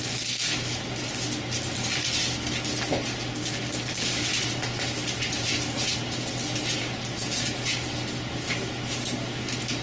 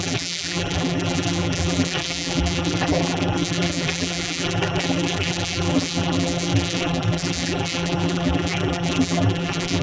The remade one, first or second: second